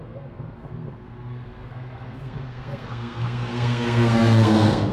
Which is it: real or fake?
fake